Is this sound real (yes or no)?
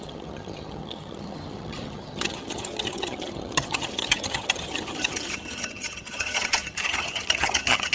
no